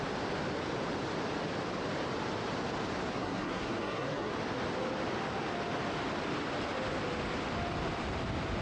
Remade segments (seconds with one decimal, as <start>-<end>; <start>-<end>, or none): 3.1-4.3